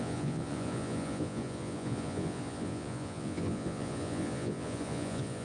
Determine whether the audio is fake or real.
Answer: fake